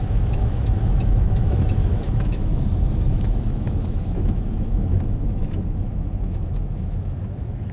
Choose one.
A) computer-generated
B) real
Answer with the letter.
A